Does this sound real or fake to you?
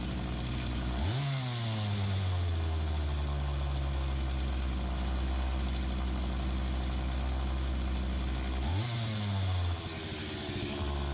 real